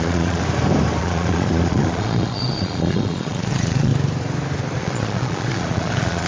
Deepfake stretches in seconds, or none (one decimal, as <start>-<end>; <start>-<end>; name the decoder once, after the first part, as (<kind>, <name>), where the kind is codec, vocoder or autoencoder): 0.0-0.4 (vocoder, Vocos); 1.0-3.9; 4.8-6.3